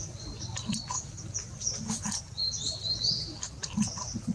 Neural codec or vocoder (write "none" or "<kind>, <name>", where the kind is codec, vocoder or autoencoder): none